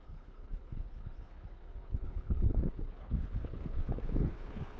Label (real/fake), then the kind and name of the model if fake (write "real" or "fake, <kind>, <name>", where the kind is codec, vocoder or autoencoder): fake, codec, HILCodec